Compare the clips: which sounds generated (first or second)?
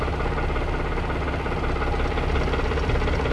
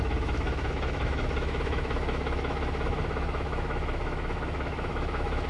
second